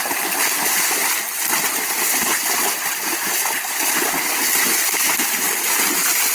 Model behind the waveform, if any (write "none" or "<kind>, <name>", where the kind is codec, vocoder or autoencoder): none